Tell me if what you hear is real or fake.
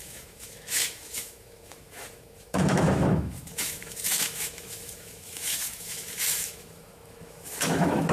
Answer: fake